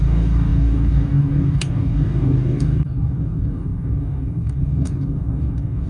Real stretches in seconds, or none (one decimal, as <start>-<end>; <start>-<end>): none